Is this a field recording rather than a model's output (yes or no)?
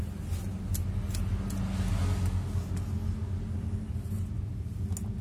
yes